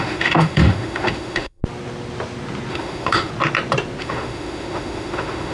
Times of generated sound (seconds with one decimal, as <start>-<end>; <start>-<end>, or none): 0.0-1.6; 2.7-3.3; 4.0-5.5